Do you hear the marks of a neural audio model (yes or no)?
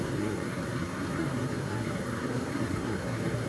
yes